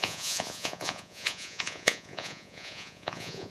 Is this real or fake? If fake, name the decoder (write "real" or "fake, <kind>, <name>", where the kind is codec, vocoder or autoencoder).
fake, vocoder, Vocos